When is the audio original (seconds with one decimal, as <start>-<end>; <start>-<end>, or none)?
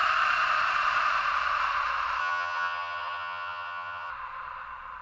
0.0-2.2; 4.1-5.0